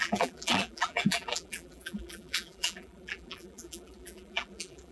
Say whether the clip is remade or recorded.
remade